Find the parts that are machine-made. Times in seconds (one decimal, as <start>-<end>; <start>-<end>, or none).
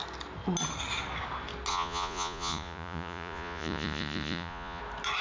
1.7-4.8